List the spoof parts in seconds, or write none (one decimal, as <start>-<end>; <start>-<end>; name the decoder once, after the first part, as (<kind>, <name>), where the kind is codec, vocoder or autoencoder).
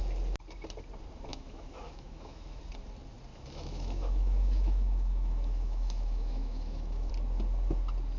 1.3-2.6 (autoencoder, DAC-VAE); 3.3-7.1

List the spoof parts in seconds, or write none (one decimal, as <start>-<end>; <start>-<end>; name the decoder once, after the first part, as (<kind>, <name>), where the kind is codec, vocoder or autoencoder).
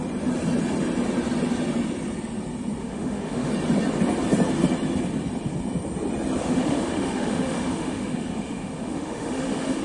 2.8-3.5 (autoencoder, DAC-VAE); 6.4-9.8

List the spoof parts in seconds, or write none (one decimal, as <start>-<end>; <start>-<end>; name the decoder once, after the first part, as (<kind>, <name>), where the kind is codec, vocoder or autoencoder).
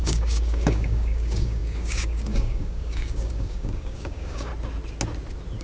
0.0-4.5 (codec, DAC)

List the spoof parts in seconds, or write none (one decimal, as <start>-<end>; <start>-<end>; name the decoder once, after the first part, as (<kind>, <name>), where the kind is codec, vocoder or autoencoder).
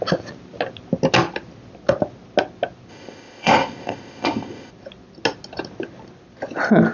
2.9-4.7 (codec, ZipCodec)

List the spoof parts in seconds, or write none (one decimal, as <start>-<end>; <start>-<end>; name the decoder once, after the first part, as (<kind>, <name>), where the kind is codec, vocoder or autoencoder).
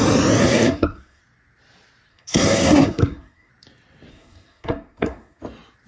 0.4-1.2 (codec, SNAC); 2.1-3.5; 4.1-5.4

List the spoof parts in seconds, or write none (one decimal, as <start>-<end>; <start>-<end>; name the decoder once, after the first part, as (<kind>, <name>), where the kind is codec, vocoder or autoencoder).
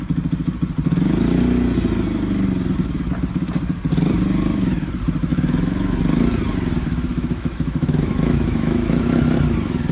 5.3-6.0 (autoencoder, DAC-VAE); 7.1-9.2